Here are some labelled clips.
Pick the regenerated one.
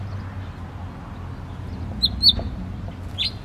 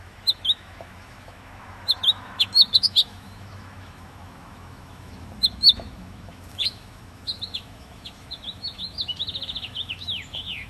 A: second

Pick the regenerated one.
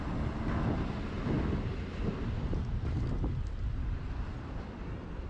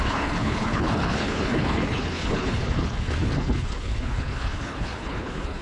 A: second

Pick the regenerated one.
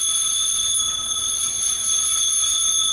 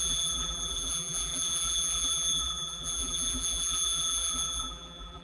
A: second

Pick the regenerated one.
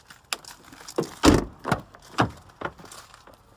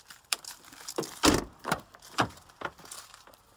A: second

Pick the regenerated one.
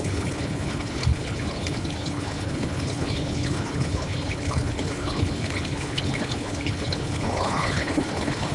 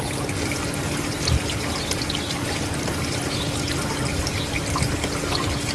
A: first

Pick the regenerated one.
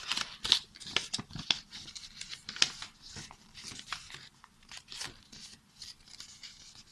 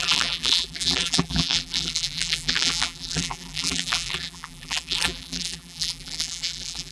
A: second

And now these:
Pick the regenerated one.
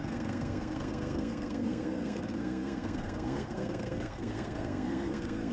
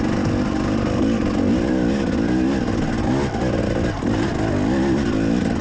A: first